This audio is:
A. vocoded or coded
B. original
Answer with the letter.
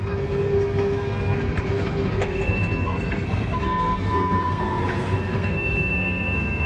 A